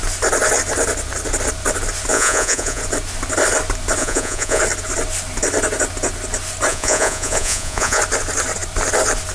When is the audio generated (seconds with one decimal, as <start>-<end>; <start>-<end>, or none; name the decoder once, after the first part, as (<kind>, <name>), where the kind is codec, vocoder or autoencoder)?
2.1-2.8 (vocoder, Vocos); 4.0-4.6; 6.7-8.0